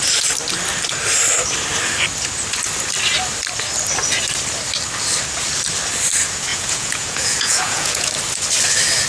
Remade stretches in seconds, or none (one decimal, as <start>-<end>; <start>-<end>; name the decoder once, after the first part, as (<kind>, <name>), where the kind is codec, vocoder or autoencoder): 6.5-8.1 (vocoder, Vocos)